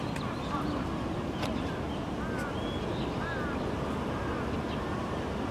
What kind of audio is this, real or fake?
real